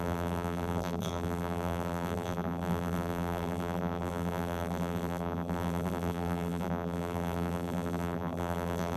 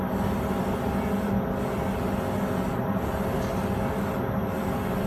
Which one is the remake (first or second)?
first